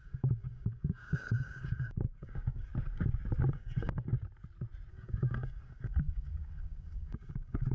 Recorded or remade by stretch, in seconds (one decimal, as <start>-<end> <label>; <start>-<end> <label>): 0.0-2.7 remade; 2.7-3.5 recorded; 3.5-4.1 remade; 4.1-4.9 recorded; 4.9-7.7 remade